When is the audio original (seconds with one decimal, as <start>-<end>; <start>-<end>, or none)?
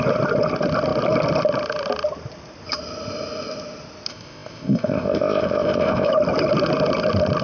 0.0-4.1; 6.1-7.4